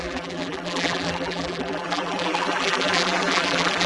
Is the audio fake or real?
fake